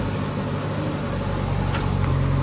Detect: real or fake real